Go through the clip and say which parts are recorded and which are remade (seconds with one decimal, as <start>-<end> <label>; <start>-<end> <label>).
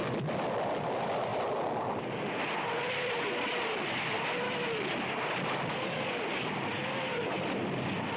0.0-8.2 recorded